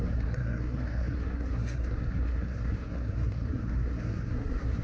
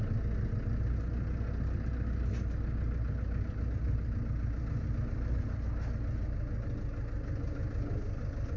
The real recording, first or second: second